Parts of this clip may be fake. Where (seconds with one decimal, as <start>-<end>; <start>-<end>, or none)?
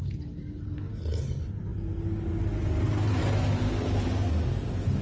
none